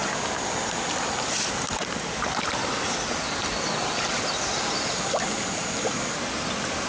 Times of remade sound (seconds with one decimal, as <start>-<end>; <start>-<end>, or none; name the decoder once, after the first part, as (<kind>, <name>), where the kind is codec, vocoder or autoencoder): none